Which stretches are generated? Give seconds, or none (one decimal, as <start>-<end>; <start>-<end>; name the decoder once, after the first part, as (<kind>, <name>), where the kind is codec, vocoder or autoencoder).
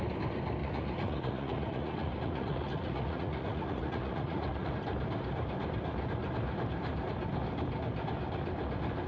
0.6-4.7 (vocoder, Vocos)